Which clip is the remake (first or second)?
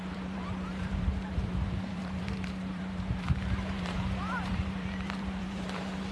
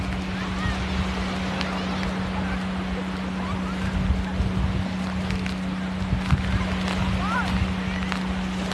first